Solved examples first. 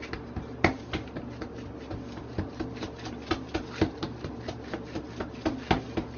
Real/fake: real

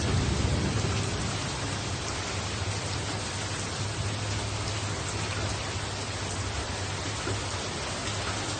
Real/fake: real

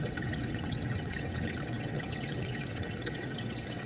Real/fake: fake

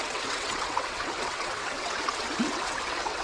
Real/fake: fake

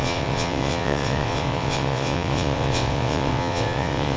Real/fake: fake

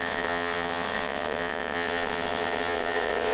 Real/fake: fake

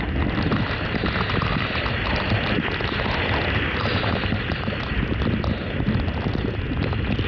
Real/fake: real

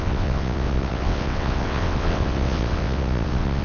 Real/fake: fake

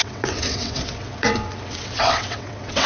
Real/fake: fake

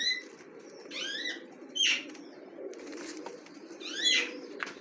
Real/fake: real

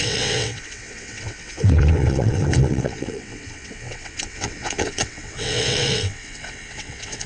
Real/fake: fake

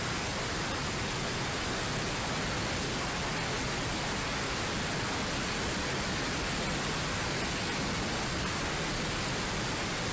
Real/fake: real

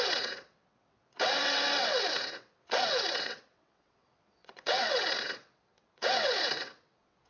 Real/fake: fake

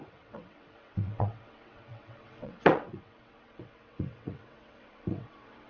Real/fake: fake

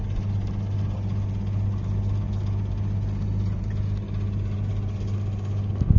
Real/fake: real